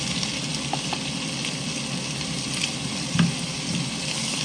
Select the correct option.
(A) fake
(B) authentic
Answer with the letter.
B